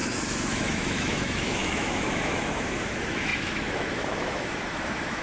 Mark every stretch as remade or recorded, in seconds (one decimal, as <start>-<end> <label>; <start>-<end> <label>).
0.0-5.2 remade